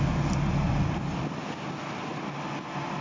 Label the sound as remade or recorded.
recorded